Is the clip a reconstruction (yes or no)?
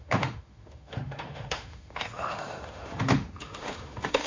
yes